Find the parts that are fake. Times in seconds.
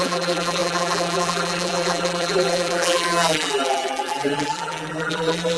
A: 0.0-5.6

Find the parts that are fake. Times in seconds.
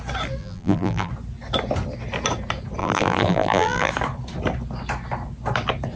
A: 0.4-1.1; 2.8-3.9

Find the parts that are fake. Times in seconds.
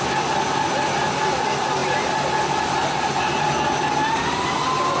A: none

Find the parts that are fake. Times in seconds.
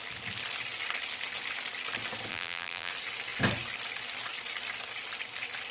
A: 2.3-2.9